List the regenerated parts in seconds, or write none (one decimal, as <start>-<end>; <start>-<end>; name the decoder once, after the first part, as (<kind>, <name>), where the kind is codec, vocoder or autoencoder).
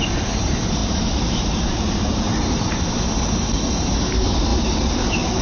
0.8-2.7 (vocoder, BigVGAN v2); 4.5-5.4